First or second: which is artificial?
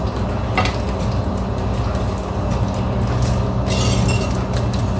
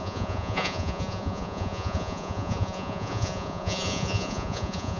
second